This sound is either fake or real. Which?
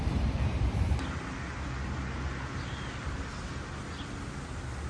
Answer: real